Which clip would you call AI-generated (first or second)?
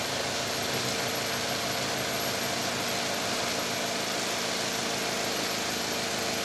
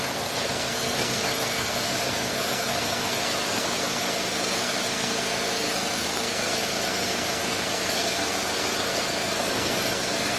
second